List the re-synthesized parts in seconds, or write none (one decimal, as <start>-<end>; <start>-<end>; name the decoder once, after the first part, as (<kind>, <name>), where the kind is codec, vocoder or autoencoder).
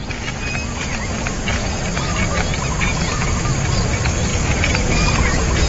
none